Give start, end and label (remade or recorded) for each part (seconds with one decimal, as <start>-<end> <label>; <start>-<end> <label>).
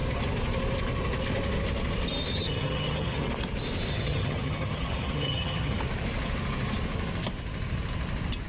0.0-2.3 recorded; 2.3-3.3 remade; 3.3-3.9 recorded; 3.9-5.8 remade; 5.8-8.5 recorded